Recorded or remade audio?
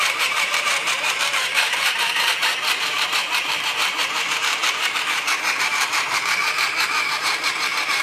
remade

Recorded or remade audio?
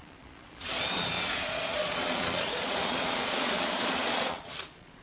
remade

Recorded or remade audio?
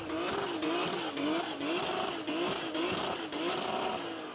recorded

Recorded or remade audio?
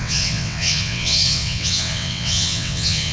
remade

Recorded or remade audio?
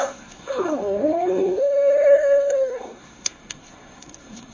remade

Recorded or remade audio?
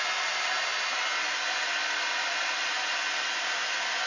recorded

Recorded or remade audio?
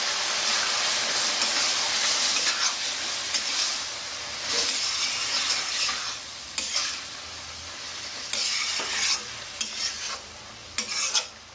recorded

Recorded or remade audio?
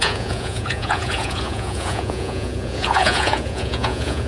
remade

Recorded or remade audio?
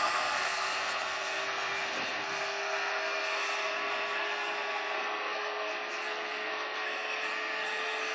remade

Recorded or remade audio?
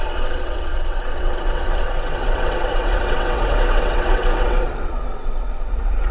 remade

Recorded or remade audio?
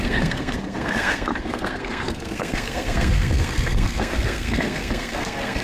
remade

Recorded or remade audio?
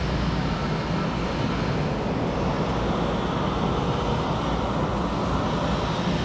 recorded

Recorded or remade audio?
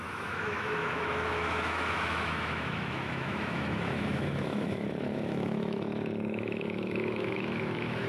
remade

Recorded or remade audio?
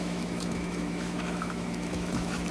remade